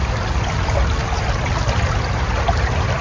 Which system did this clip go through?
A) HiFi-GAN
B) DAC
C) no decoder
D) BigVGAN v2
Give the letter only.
C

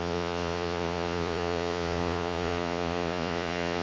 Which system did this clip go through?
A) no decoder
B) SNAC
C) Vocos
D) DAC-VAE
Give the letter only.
C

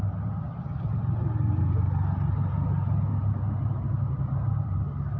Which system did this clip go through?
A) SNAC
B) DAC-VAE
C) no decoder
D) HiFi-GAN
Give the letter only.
C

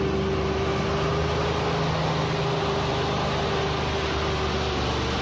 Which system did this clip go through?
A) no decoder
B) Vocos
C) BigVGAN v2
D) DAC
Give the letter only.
A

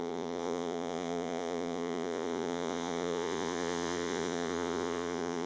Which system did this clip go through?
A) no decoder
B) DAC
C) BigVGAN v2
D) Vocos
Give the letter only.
D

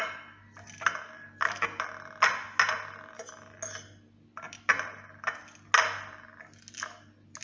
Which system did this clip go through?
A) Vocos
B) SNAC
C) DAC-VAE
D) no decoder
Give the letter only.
D